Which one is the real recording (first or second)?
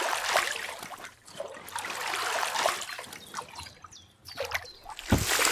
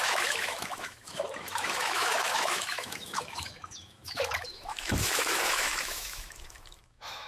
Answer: first